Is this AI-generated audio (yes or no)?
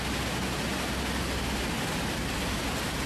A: no